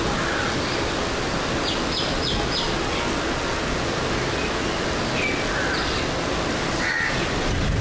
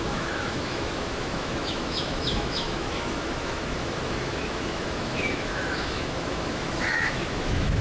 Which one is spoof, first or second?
second